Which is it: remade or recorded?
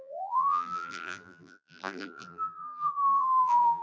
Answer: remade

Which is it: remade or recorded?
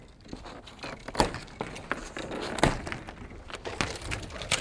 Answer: recorded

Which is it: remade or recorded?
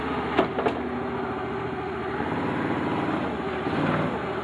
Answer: recorded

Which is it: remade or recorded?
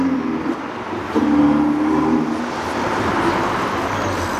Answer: recorded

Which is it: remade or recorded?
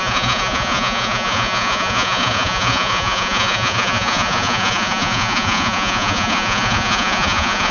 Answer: remade